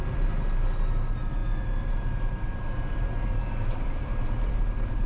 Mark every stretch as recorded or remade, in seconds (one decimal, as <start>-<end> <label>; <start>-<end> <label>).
0.0-5.1 recorded